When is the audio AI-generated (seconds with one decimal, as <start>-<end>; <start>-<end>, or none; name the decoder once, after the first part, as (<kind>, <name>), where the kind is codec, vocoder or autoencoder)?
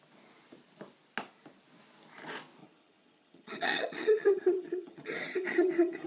2.6-6.1 (vocoder, HiFi-GAN)